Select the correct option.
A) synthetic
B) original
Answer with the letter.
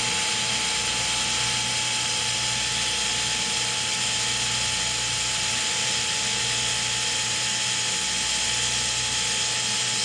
B